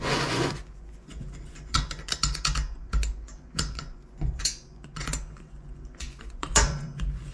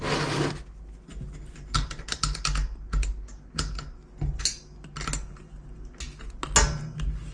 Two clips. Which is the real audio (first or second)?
second